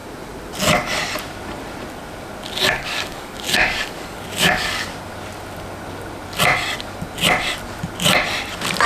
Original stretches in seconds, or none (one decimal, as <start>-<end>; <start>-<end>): 0.0-2.7; 4.9-8.9